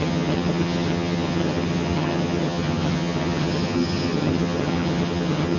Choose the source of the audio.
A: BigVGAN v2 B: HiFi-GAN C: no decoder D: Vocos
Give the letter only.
B